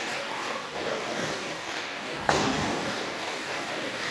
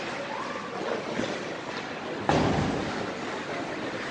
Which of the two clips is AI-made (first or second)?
first